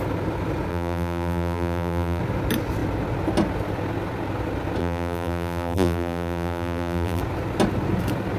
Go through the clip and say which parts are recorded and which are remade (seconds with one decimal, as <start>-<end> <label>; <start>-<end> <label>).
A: 0.0-0.7 recorded; 0.7-2.2 remade; 2.2-4.8 recorded; 4.8-7.2 remade; 7.2-8.4 recorded